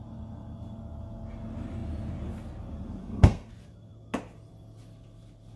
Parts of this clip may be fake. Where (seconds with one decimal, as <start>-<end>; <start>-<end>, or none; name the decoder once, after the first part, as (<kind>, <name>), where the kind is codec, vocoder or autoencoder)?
3.0-3.5 (codec, SNAC)